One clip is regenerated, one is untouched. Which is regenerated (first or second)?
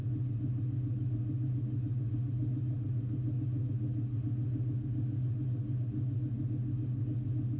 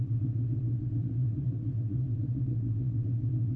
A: second